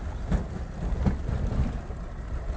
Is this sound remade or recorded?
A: recorded